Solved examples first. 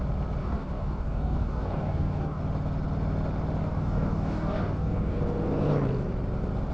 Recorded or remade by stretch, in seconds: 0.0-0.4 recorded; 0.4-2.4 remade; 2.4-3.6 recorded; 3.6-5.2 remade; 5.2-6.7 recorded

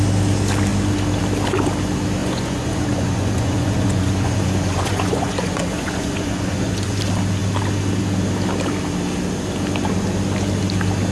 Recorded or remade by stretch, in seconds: 0.0-2.2 recorded; 2.2-7.0 remade; 7.0-11.1 recorded